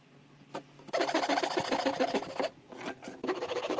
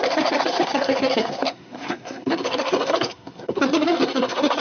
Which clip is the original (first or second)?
first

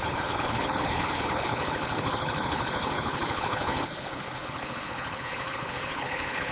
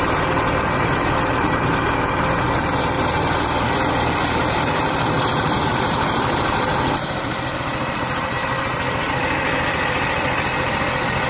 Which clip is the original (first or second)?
second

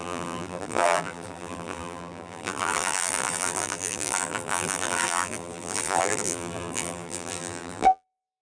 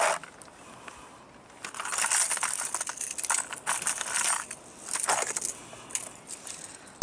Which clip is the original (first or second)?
second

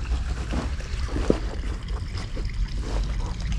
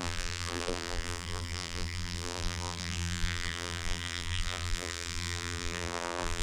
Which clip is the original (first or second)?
first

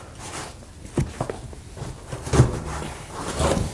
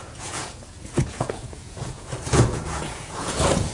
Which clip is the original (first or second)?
first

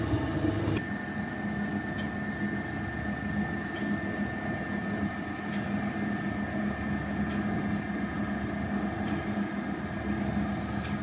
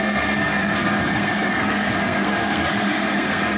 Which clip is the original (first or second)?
first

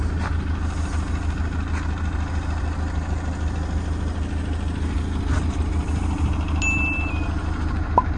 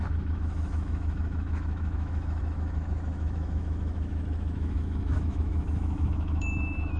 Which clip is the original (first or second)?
first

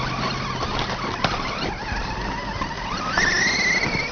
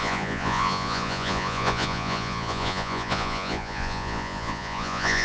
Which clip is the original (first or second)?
first